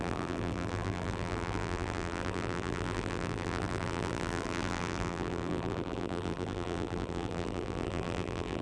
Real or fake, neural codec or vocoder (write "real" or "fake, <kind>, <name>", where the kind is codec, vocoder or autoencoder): fake, vocoder, BigVGAN v2